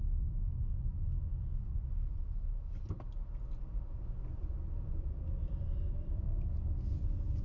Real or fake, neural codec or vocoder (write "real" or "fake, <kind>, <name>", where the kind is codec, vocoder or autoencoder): real